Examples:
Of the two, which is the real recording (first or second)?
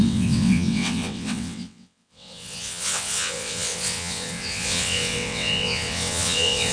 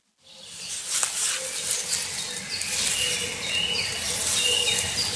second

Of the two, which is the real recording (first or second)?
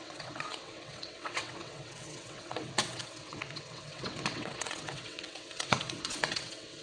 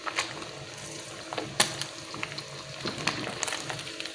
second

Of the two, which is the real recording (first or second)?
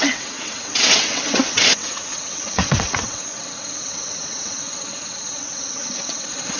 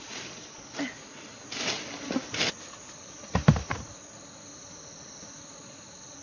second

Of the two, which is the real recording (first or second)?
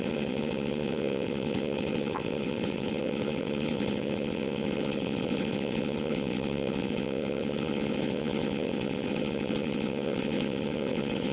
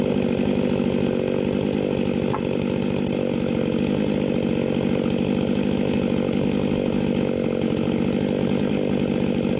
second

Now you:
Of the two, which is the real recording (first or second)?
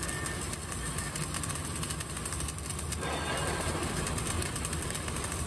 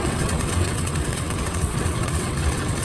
first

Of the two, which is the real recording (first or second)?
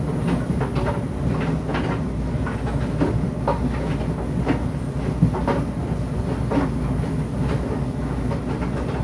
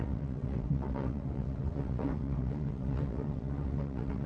first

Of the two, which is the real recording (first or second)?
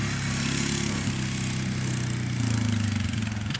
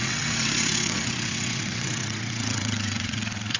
first